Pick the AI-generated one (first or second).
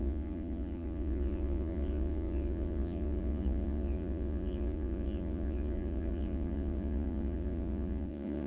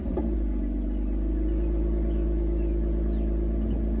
first